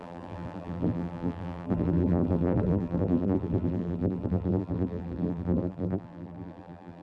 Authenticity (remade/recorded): remade